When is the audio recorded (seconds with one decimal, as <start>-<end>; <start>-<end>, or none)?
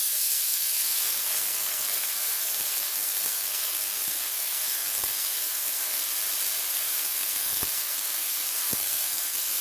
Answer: 6.1-6.7